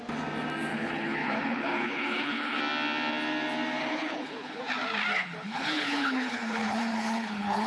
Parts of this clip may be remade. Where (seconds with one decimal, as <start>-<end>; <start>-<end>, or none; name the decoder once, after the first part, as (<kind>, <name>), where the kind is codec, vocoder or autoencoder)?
0.7-2.6 (codec, HILCodec); 3.8-4.6; 5.1-7.7